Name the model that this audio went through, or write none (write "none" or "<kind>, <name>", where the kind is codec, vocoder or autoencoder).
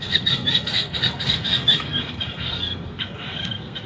codec, SNAC